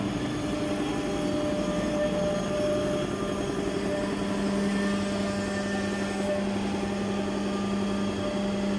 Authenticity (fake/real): real